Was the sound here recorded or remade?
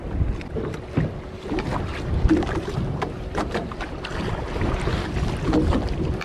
recorded